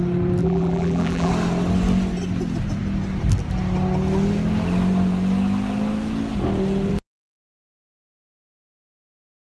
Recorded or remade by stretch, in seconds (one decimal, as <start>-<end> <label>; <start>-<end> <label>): 0.0-0.4 recorded; 0.4-1.3 remade; 1.3-9.6 recorded